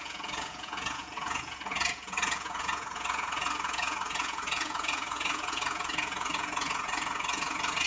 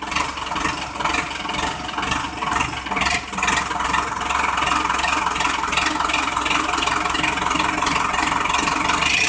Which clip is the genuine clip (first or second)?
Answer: second